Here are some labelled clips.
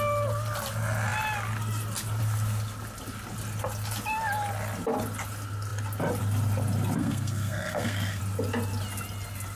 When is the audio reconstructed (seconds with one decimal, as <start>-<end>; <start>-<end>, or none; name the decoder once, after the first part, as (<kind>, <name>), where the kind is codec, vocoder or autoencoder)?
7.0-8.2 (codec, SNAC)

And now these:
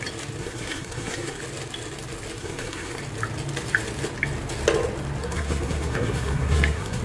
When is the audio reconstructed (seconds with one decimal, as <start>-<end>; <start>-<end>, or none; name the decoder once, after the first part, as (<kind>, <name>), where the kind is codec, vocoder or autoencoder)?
0.4-1.4 (codec, SNAC); 2.4-3.0; 5.2-7.0

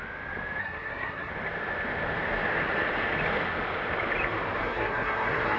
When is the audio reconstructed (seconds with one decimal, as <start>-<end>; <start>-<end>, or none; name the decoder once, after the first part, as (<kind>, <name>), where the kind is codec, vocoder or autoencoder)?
0.6-1.3 (codec, SNAC); 4.6-5.6

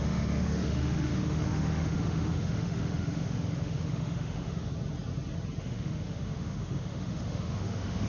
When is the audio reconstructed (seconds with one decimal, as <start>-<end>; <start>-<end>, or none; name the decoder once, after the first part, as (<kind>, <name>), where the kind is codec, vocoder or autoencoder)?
0.0-4.7 (autoencoder, DAC-VAE); 5.6-8.1